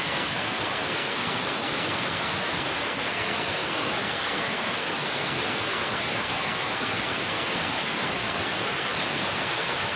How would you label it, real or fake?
fake